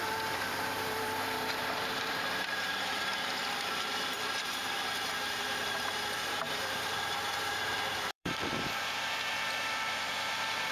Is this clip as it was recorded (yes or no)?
no